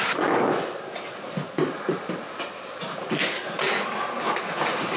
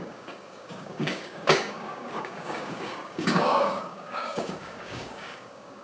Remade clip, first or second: second